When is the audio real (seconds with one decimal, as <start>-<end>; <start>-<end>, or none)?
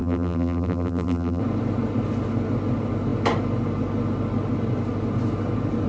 1.4-5.9